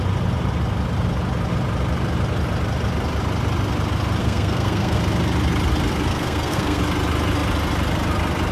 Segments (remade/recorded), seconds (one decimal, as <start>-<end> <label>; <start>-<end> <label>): 0.0-4.2 recorded; 4.2-5.0 remade; 5.0-6.1 recorded; 6.1-6.8 remade; 6.8-8.5 recorded